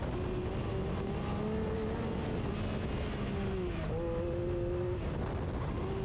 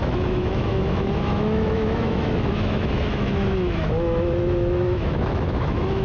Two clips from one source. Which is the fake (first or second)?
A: second